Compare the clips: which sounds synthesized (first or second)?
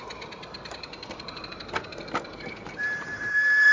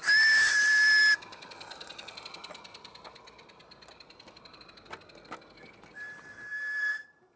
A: first